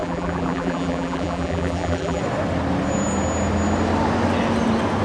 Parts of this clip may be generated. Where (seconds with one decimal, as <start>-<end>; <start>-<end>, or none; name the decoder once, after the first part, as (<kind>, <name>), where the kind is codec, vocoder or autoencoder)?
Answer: 0.0-2.2 (vocoder, BigVGAN v2)